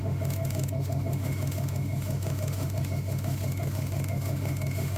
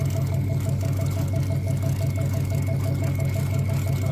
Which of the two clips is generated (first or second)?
first